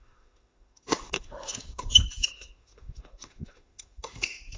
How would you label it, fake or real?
fake